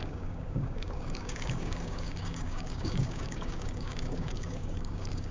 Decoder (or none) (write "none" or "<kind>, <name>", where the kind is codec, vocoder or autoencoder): codec, DAC